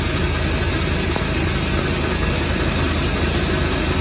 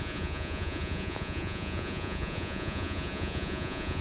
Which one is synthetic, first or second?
second